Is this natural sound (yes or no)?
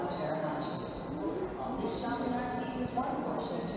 yes